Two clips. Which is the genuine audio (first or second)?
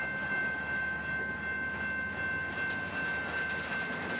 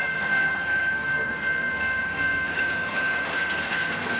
first